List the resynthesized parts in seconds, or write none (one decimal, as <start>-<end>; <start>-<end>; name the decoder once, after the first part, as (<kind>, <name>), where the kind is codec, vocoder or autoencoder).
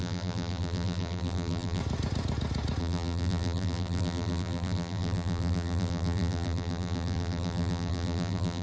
0.0-1.8 (vocoder, BigVGAN v2); 2.8-8.6